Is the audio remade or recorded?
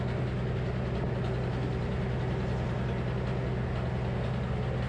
recorded